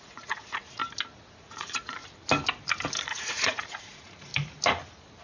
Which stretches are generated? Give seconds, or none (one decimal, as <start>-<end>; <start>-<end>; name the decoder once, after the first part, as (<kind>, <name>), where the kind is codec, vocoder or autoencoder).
0.0-0.8 (vocoder, Vocos); 1.3-2.0; 3.0-4.3